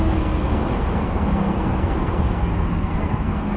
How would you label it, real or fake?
fake